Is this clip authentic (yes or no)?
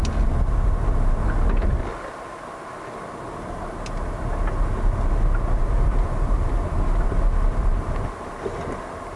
yes